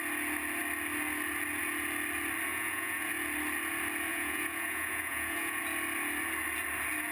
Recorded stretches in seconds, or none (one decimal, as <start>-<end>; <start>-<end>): 0.0-2.5; 3.1-4.1; 5.6-7.1